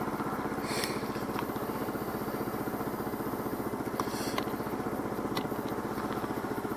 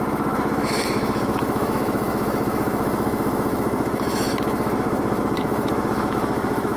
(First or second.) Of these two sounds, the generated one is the second